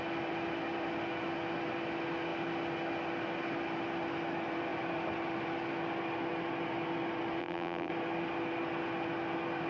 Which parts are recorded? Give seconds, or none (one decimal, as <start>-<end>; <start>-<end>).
0.0-7.4; 7.9-9.7